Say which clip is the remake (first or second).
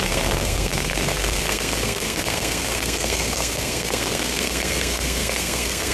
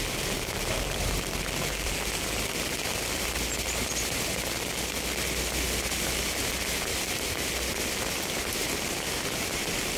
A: first